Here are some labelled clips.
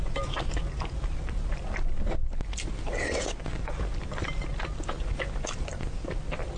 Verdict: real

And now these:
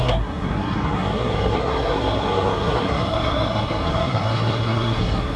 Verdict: fake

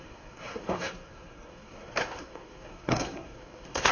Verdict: fake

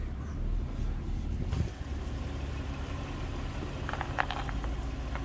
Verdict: real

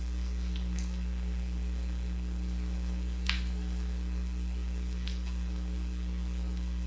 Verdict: fake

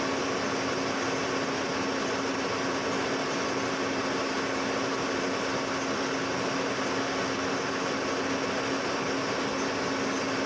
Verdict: real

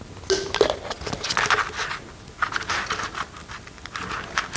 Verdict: real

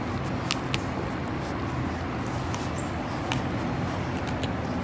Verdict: real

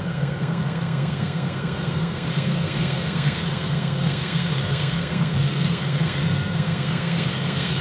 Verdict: fake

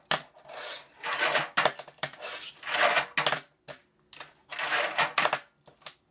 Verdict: real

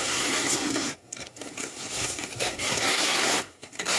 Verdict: fake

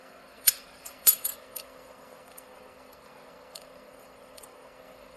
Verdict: fake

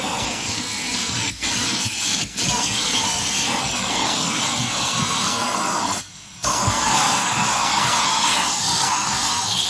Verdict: fake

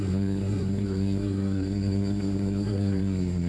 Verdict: fake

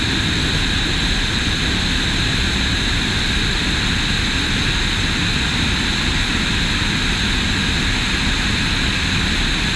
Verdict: real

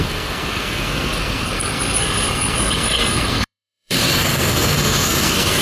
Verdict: fake